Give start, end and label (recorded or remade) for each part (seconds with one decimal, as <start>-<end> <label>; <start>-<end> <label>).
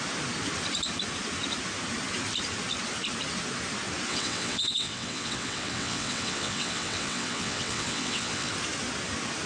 0.0-4.1 recorded; 4.1-8.5 remade; 8.5-9.5 recorded